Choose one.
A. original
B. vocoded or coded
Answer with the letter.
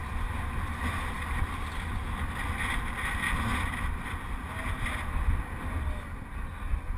A